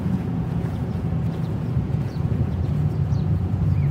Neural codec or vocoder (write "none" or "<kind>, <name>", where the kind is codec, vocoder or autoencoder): vocoder, Vocos